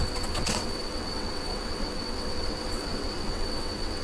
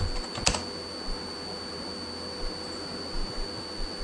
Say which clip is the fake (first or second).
first